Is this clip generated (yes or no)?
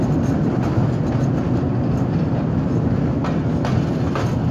no